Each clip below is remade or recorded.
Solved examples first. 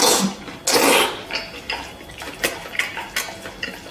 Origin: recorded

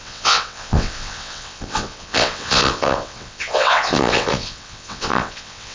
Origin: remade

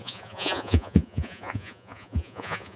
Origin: remade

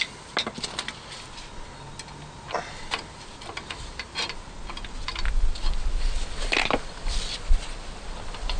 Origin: recorded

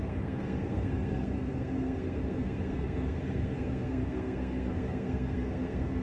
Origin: remade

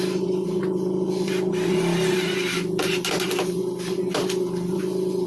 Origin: recorded